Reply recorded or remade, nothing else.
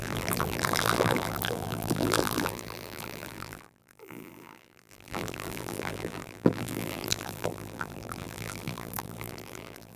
remade